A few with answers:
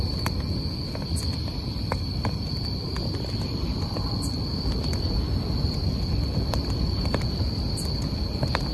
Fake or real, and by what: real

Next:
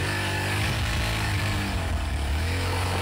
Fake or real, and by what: fake, codec, DAC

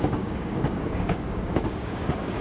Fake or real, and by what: fake, codec, DAC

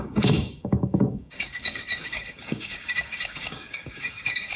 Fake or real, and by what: fake, codec, DAC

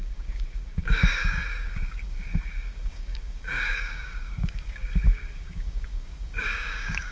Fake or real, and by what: fake, codec, DAC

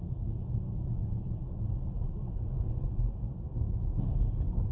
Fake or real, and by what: real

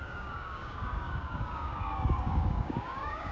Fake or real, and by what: fake, codec, DAC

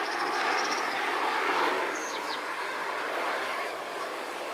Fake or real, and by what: fake, codec, DAC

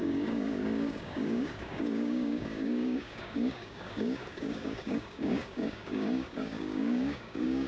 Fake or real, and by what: fake, codec, DAC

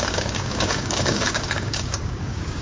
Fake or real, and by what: fake, codec, DAC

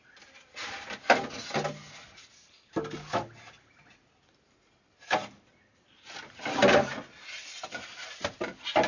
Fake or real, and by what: real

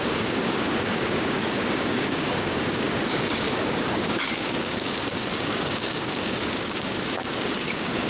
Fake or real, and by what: fake, codec, DAC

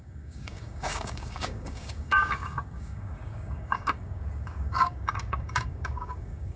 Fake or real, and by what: fake, codec, DAC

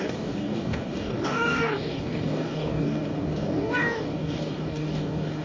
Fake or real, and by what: fake, codec, DAC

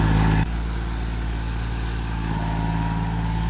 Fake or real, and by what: fake, codec, DAC